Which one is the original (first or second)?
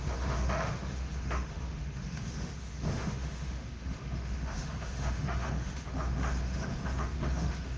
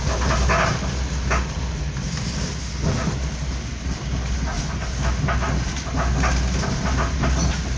second